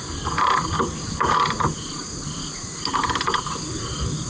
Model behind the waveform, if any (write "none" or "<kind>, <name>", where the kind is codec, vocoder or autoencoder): none